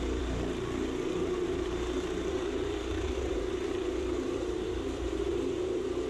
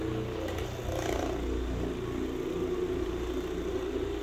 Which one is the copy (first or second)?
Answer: first